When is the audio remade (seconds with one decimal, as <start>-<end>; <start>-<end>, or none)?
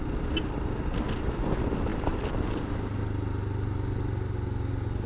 none